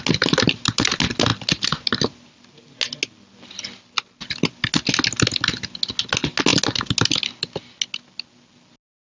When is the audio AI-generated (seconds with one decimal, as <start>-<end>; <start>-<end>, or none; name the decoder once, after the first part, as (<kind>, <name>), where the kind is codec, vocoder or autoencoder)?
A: none